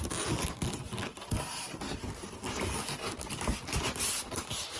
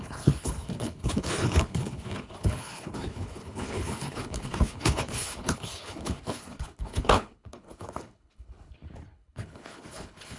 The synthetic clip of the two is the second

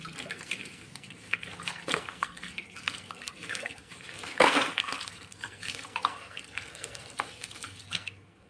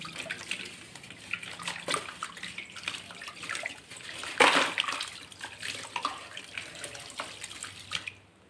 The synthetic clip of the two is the first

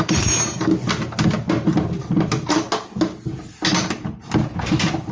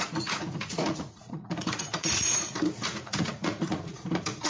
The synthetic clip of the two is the second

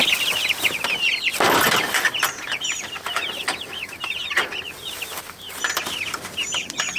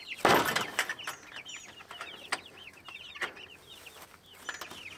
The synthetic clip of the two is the first